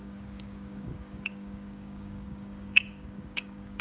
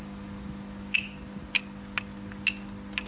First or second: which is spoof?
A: first